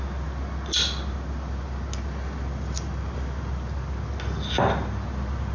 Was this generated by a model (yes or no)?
no